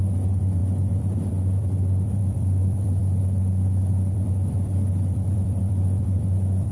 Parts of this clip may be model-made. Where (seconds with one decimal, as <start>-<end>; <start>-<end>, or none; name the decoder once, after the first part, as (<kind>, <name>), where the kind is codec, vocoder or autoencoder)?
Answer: 0.0-6.7 (vocoder, BigVGAN v2)

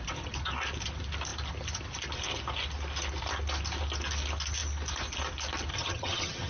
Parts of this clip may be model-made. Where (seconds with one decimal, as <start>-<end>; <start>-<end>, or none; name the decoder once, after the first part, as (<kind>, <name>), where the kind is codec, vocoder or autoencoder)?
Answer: 5.7-6.5 (vocoder, HiFi-GAN)

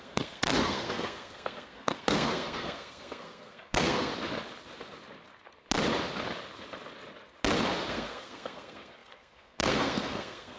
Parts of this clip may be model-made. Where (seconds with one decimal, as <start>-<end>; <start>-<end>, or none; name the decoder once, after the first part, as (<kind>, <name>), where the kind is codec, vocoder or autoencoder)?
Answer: 0.0-4.1 (codec, SNAC); 7.9-10.6

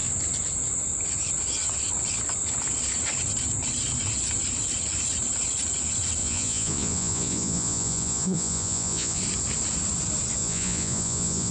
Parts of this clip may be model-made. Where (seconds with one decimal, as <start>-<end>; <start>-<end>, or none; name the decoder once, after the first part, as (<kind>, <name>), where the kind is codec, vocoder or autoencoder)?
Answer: 6.2-9.2 (vocoder, Vocos); 10.4-11.5